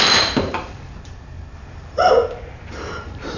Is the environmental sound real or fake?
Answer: fake